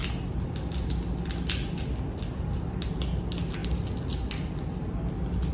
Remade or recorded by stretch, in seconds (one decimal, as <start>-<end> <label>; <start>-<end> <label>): 0.0-5.5 recorded